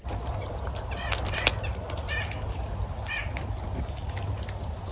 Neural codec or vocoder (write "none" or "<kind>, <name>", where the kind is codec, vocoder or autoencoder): none